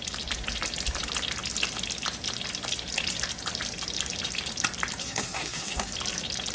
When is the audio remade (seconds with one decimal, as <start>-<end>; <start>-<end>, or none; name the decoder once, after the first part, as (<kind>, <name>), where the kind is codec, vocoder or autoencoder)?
5.0-5.9 (codec, SNAC)